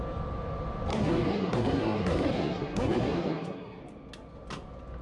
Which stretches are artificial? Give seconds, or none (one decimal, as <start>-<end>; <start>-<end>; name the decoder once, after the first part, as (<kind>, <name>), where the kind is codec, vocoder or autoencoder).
0.9-3.8 (codec, SNAC)